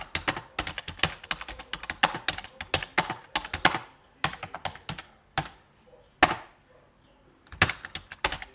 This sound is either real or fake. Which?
real